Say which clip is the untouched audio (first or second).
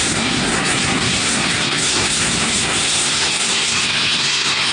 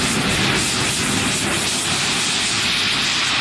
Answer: second